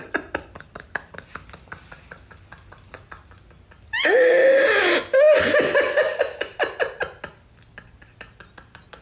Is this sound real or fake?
real